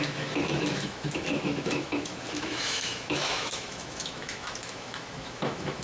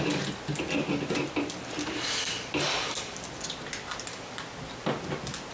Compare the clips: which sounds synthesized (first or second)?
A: first